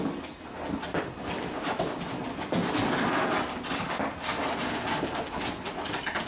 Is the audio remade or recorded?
recorded